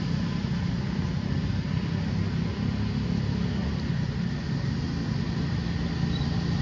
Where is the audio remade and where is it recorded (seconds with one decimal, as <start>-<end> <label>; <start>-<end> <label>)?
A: 0.0-6.6 recorded

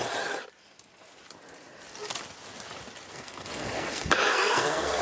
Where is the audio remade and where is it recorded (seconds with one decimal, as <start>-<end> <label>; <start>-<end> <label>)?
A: 0.0-3.1 recorded; 3.1-5.0 remade

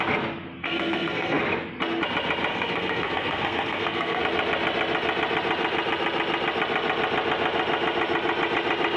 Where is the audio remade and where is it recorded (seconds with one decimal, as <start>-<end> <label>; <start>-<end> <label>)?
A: 0.0-0.6 recorded; 0.6-1.4 remade; 1.4-2.5 recorded; 2.5-4.2 remade; 4.2-9.0 recorded

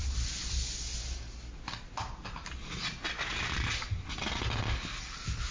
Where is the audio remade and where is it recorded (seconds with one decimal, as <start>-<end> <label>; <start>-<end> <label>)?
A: 0.0-5.5 recorded

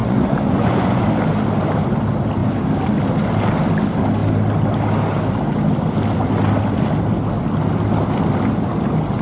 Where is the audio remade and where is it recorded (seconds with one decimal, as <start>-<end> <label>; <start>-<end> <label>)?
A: 0.0-1.0 remade; 1.0-9.2 recorded

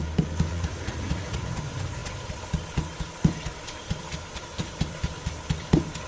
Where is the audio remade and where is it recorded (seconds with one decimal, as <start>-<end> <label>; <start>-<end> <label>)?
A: 0.0-0.5 recorded; 0.5-1.6 remade; 1.6-6.1 recorded

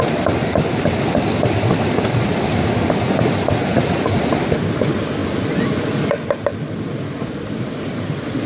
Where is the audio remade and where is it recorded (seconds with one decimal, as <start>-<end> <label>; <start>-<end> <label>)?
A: 0.0-3.6 recorded; 3.6-4.3 remade; 4.3-8.5 recorded